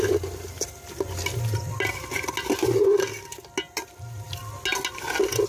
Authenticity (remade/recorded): recorded